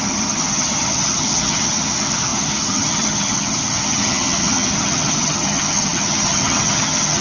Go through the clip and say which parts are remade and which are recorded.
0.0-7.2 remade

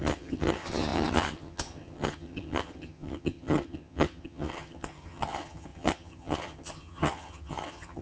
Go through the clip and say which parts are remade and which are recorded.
0.0-8.0 remade

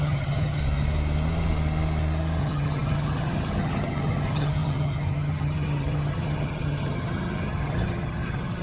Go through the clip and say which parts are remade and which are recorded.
0.0-0.6 remade; 0.6-2.4 recorded; 2.4-8.6 remade